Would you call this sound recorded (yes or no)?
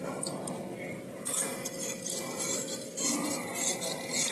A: no